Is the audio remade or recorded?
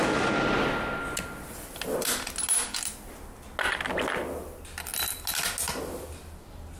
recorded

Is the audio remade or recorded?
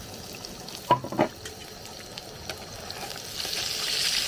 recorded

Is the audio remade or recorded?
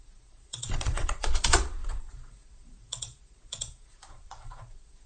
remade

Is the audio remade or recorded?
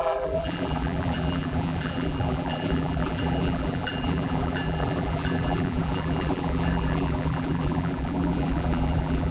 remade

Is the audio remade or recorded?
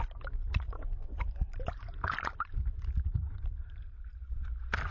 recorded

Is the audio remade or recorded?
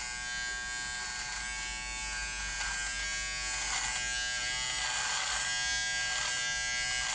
recorded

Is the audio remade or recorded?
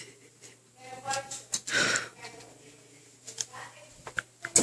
recorded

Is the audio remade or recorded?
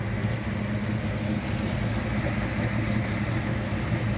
recorded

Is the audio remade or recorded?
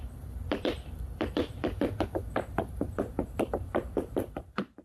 remade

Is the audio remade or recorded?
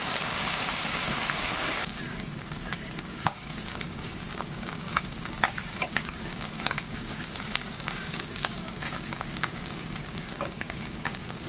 remade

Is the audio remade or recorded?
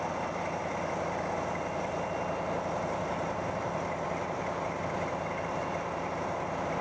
recorded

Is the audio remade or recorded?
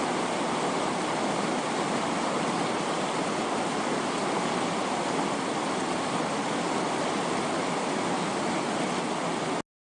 recorded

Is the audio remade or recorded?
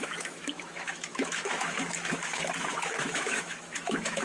remade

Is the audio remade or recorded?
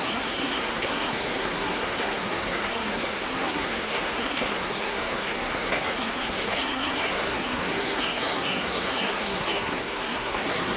remade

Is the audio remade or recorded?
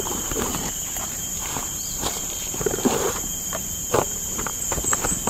remade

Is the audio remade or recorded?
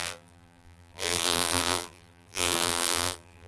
remade